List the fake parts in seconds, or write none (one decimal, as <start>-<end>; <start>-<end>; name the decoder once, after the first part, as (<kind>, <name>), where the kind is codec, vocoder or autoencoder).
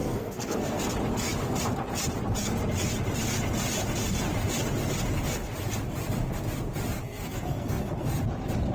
0.0-0.8 (codec, SNAC); 7.0-8.2